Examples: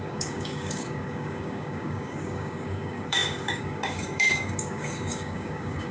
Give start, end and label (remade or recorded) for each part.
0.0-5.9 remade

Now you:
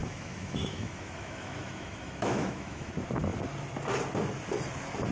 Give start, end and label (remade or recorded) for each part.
0.0-2.9 remade; 2.9-5.1 recorded

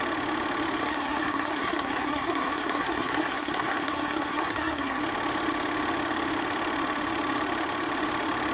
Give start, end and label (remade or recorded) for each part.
0.0-0.8 recorded; 0.8-5.0 remade; 5.0-8.5 recorded

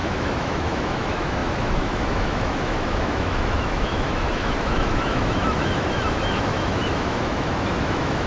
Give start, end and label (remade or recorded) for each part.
0.0-8.3 remade

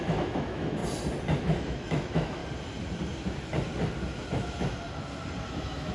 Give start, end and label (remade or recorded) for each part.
0.0-0.8 remade; 0.8-1.4 recorded; 1.4-2.4 remade; 2.4-5.5 recorded; 5.5-5.9 remade

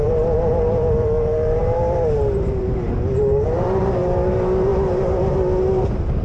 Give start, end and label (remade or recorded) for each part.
0.0-6.2 remade